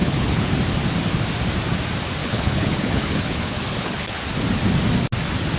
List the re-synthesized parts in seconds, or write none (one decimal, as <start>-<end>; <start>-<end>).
0.0-0.5; 2.2-4.2